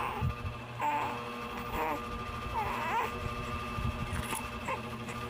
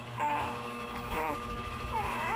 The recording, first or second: first